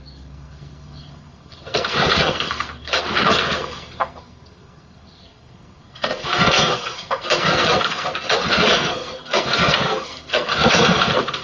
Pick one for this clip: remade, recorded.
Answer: remade